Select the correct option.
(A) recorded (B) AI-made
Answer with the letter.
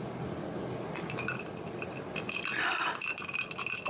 A